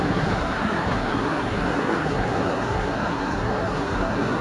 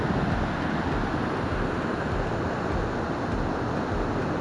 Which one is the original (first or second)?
second